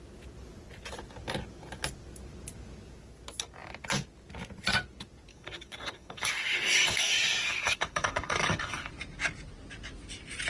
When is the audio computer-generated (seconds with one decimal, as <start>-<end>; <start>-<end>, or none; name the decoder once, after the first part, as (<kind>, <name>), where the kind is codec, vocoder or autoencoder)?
5.3-8.9 (codec, DAC)